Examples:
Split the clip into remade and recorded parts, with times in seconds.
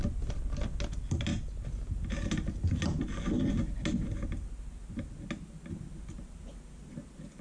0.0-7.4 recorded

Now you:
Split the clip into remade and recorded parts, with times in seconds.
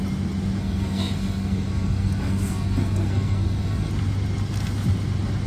0.0-0.6 recorded; 0.6-3.9 remade; 3.9-5.5 recorded